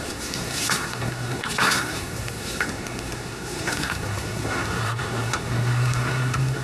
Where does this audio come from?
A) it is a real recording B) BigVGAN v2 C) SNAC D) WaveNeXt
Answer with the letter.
C